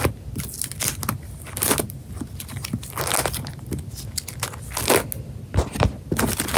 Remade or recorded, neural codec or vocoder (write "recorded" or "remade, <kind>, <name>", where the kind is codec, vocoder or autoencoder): recorded